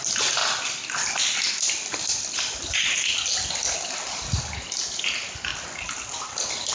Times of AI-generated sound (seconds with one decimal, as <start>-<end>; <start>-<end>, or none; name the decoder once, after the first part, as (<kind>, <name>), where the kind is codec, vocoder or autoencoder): none